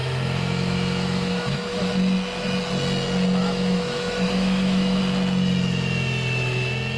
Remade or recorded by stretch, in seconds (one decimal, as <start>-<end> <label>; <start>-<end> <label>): 0.0-1.9 remade; 1.9-3.4 recorded; 3.4-5.0 remade; 5.0-7.0 recorded